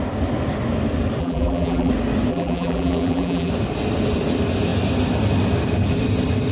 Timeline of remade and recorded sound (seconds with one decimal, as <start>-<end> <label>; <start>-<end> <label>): 0.0-1.2 recorded; 1.2-1.9 remade; 1.9-2.3 recorded; 2.3-3.5 remade; 3.5-6.5 recorded